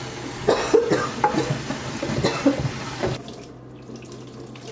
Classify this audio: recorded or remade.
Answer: recorded